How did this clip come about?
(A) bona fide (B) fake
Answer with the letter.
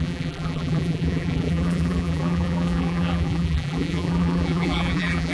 B